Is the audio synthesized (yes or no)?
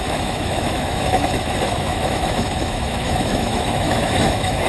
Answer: yes